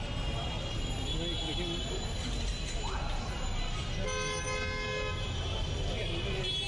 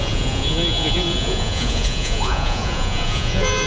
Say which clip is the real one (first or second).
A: first